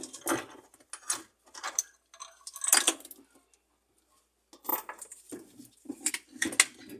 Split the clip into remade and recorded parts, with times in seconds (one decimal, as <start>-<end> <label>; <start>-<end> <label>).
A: 0.0-4.7 recorded; 4.7-6.1 remade; 6.1-7.0 recorded